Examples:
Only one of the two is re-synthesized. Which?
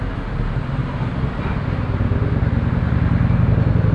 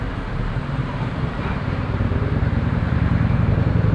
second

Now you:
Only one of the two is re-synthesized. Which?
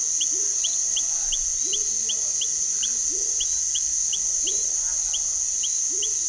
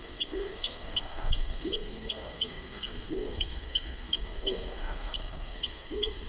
second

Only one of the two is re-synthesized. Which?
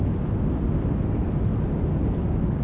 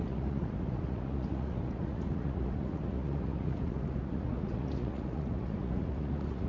second